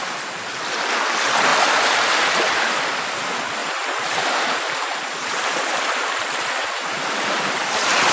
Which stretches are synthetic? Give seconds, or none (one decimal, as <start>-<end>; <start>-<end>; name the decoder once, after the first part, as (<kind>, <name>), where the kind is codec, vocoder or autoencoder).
3.6-5.7 (vocoder, BigVGAN v2); 6.6-7.4